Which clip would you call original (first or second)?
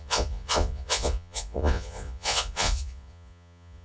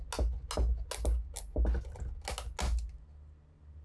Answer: second